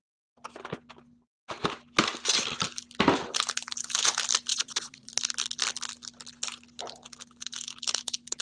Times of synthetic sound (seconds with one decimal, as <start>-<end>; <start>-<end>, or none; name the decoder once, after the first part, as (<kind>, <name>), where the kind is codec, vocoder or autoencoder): 4.5-5.1 (vocoder, Vocos)